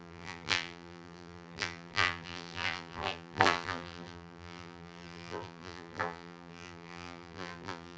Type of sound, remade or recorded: remade